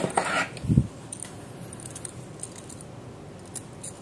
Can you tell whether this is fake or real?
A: real